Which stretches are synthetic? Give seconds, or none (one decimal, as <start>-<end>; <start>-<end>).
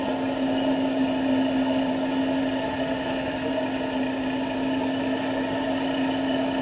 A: 2.7-3.5